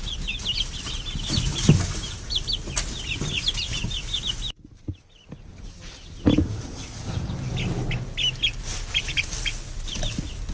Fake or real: real